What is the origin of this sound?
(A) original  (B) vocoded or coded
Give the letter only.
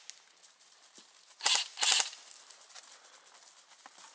A